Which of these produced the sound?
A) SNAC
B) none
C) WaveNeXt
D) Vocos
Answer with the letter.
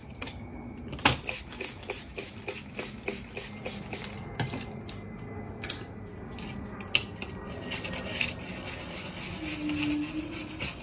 B